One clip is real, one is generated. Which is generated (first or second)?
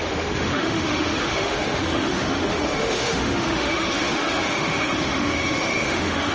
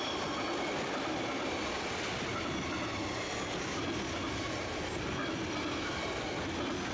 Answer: first